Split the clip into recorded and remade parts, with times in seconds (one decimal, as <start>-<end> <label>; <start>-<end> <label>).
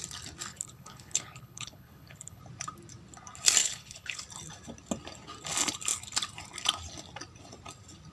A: 0.0-0.5 recorded; 0.5-2.4 remade; 2.4-3.6 recorded; 3.6-4.2 remade; 4.2-8.1 recorded